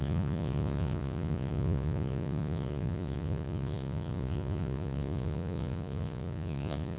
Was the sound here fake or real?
fake